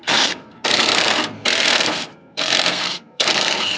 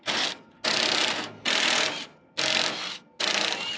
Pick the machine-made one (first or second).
first